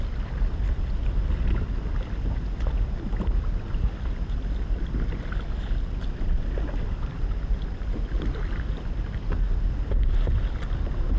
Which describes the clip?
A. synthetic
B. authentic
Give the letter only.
B